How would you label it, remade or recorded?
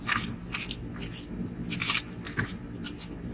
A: recorded